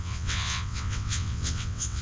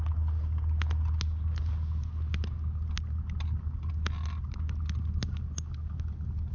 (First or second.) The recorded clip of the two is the second